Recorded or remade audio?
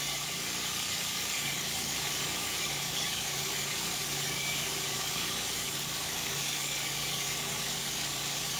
remade